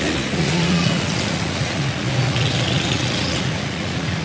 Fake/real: fake